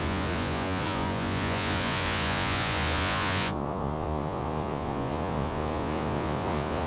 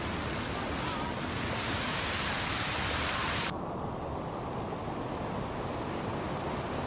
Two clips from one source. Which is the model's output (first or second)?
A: first